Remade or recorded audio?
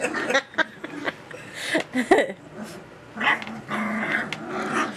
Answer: recorded